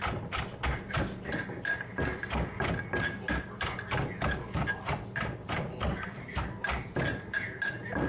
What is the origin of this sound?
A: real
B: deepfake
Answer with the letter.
A